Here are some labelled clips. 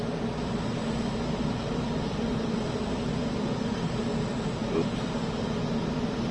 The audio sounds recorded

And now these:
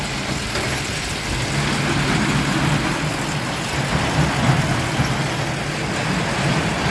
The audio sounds recorded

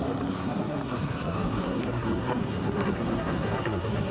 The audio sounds remade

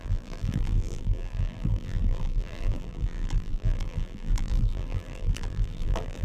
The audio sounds remade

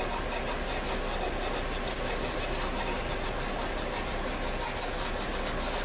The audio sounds recorded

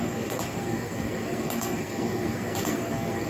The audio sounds remade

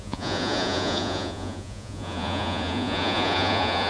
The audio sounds remade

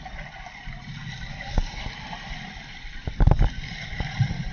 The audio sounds recorded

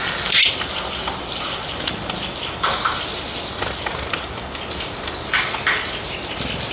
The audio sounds recorded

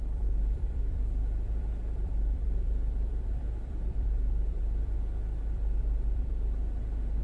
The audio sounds remade